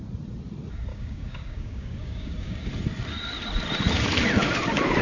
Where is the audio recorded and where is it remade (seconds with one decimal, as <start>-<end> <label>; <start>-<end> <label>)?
0.0-0.9 recorded; 0.9-2.6 remade; 2.6-5.0 recorded